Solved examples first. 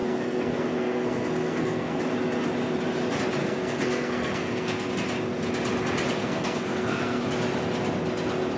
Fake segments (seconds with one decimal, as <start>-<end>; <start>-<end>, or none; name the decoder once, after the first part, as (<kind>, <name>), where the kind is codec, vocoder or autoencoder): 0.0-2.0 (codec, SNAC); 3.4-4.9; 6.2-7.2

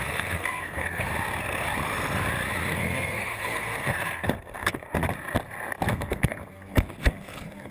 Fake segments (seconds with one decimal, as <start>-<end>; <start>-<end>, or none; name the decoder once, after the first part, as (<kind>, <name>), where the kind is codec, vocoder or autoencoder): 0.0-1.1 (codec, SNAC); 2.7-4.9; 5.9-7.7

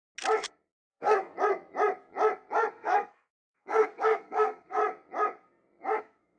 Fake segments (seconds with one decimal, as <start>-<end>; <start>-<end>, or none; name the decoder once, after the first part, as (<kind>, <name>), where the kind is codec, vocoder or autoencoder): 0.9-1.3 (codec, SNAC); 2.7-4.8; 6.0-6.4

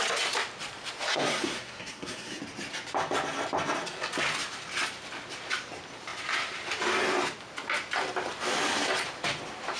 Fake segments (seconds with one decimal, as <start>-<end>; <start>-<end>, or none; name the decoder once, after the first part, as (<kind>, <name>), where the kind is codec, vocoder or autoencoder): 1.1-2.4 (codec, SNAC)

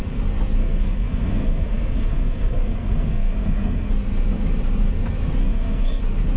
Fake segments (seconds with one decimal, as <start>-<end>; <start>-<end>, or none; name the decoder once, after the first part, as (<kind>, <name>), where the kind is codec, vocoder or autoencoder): 0.6-3.9 (codec, SNAC); 5.4-6.0